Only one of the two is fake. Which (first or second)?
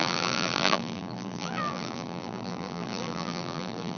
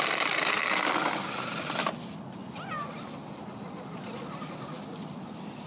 first